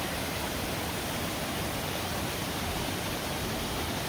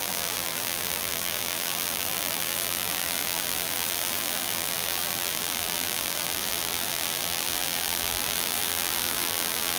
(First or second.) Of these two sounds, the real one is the first